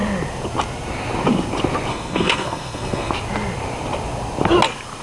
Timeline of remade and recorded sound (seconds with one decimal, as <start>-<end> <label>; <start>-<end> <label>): 0.0-1.9 recorded; 1.9-3.1 remade; 3.1-5.0 recorded